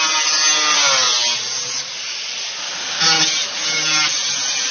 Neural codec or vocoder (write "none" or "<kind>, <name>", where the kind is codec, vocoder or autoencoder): none